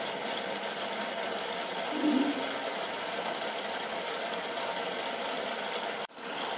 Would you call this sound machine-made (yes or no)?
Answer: no